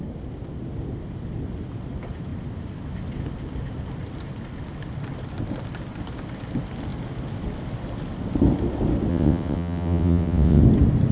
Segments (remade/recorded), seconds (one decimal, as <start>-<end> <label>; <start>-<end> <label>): 0.0-9.1 recorded; 9.1-10.6 remade; 10.6-11.1 recorded